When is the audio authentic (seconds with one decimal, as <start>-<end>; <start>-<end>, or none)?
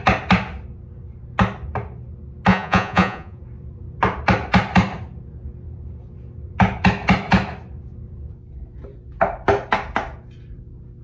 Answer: 0.0-2.5; 3.4-11.0